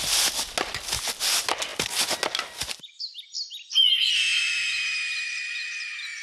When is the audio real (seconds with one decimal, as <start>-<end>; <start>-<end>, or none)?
0.0-6.2